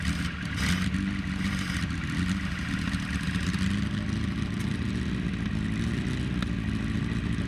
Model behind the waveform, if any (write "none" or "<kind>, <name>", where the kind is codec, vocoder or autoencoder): none